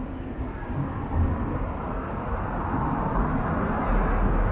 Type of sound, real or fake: real